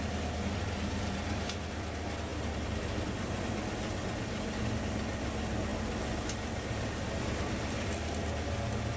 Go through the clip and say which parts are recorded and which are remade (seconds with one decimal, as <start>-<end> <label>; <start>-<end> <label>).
0.0-9.0 recorded